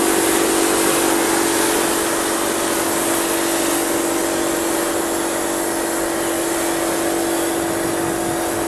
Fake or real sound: real